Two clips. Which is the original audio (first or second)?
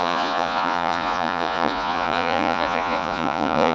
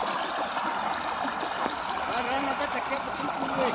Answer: second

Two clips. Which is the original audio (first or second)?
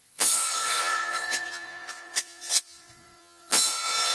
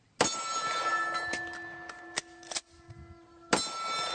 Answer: second